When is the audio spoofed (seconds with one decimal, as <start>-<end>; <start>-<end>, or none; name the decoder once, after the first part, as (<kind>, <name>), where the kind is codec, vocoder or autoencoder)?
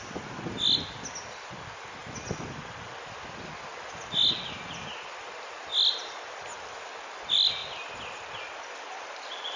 none